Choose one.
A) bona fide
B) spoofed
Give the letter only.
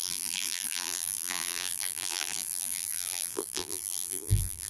B